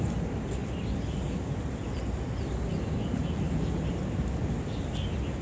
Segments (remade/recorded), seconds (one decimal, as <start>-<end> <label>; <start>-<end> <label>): 0.0-5.4 recorded